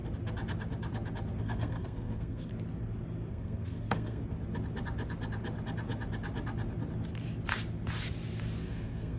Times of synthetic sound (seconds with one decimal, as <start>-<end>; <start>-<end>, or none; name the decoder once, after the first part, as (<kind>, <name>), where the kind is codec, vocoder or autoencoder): 1.4-2.5 (codec, SNAC); 3.3-4.2; 8.6-9.2